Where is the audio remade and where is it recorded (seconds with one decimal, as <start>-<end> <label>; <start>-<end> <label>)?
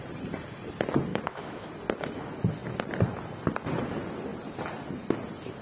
0.0-1.1 recorded; 1.1-1.7 remade; 1.7-5.6 recorded